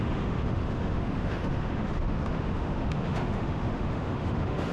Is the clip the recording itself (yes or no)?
no